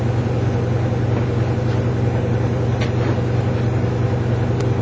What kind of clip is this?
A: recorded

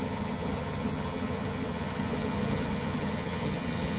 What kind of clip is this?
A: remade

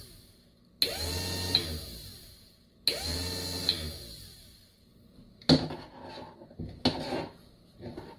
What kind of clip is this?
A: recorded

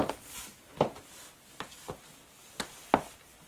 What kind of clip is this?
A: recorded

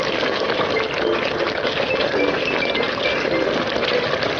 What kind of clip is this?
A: recorded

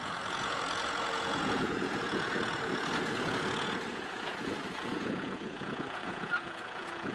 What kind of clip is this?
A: remade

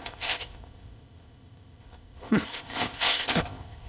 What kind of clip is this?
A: remade